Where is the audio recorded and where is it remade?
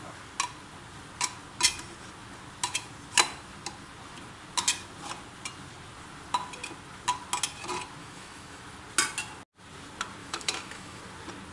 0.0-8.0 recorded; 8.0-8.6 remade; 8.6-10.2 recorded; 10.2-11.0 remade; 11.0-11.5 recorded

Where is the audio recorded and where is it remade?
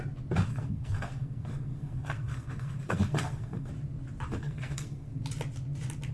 0.0-0.5 recorded; 0.5-3.7 remade; 3.7-4.3 recorded; 4.3-5.2 remade; 5.2-6.1 recorded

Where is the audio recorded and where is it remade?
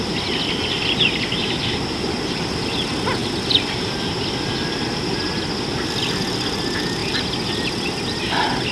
0.0-3.2 recorded; 3.2-5.3 remade; 5.3-5.7 recorded; 5.7-6.2 remade; 6.2-7.0 recorded; 7.0-8.7 remade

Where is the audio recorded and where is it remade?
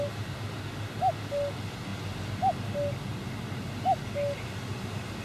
0.0-5.2 recorded